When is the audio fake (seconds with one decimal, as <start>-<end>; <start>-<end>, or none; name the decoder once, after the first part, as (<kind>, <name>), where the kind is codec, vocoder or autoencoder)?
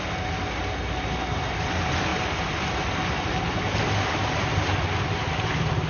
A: none